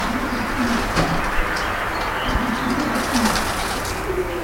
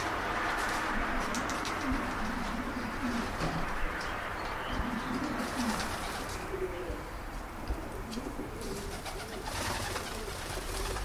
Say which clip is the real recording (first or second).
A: first